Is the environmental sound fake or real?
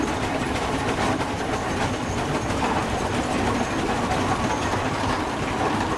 real